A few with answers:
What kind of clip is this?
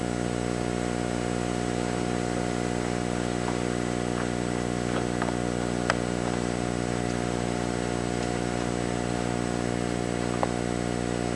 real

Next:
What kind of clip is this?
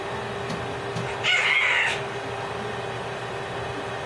real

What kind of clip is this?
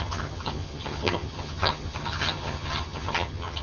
fake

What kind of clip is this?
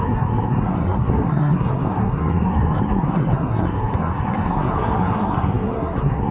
fake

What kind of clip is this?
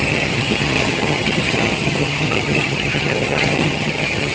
fake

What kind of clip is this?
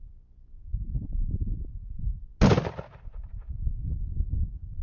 real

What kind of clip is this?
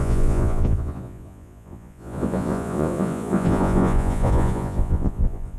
fake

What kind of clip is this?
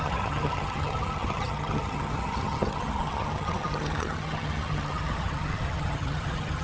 fake